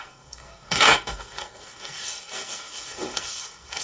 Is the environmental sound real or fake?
fake